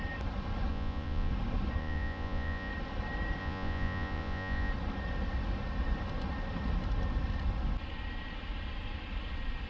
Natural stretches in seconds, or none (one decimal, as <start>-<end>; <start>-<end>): 0.0-0.7; 1.3-1.8; 2.7-3.4; 4.7-9.7